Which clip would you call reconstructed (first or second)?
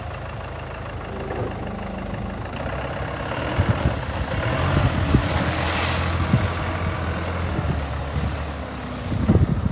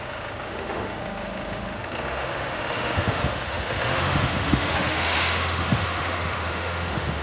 second